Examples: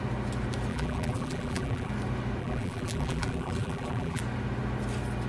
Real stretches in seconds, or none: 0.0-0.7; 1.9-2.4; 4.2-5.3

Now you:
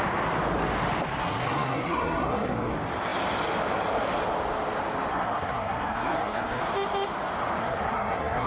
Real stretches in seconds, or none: 0.0-1.2; 2.7-5.1; 6.6-7.6

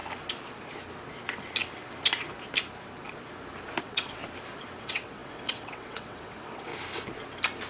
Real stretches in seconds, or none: 0.0-3.8; 4.2-4.8; 6.7-7.7

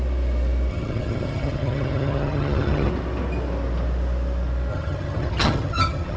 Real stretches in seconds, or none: 0.0-0.7; 2.9-4.7

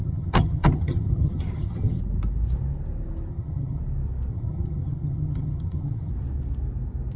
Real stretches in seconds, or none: 2.0-3.3; 3.8-4.3; 6.1-7.2

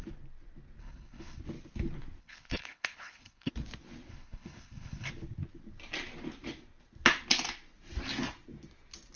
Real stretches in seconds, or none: 0.0-0.8; 1.4-2.2; 3.5-4.1; 5.1-9.2

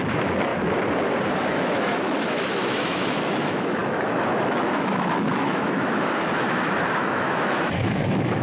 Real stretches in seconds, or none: 0.5-1.4

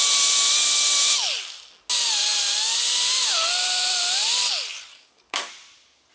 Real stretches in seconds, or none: 0.0-4.9; 5.5-6.1